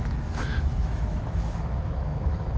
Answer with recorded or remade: remade